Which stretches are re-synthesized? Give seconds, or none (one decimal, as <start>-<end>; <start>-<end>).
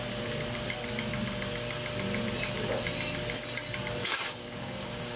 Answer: 4.0-5.2